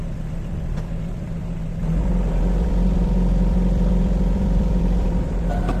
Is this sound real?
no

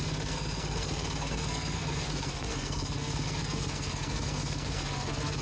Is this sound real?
no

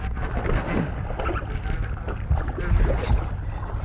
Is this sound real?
yes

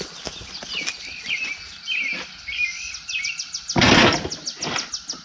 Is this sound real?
yes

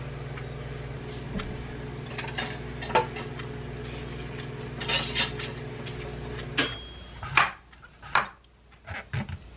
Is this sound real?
yes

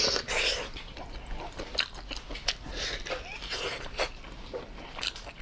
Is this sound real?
yes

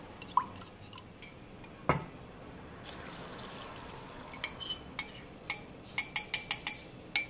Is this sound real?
yes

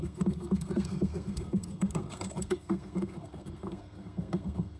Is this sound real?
no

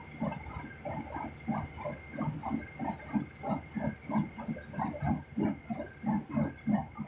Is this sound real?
yes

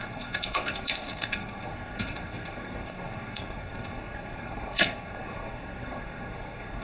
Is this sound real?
no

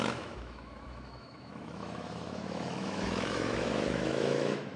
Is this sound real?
no